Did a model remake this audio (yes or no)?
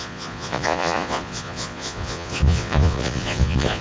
yes